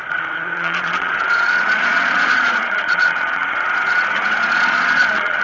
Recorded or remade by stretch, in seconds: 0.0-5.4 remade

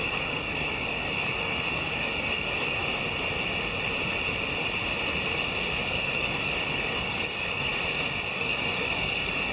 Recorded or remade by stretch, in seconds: 0.0-2.8 remade; 2.8-5.8 recorded; 5.8-7.7 remade; 7.7-8.3 recorded; 8.3-9.5 remade

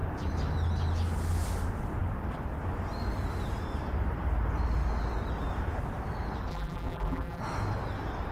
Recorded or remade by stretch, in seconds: 0.0-6.5 recorded; 6.5-7.4 remade; 7.4-8.3 recorded

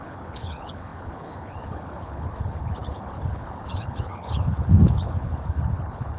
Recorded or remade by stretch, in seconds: 0.0-6.2 remade

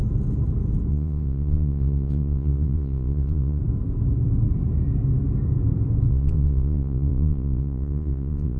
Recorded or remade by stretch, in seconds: 0.0-0.9 recorded; 0.9-3.6 remade; 3.6-6.1 recorded; 6.1-8.6 remade

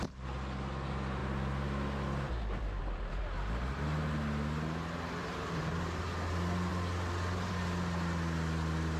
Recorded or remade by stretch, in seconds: 0.0-5.2 recorded; 5.2-6.0 remade; 6.0-9.0 recorded